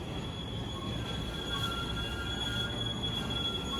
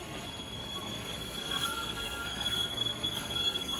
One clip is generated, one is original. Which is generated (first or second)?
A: second